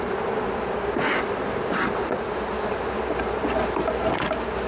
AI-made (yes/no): no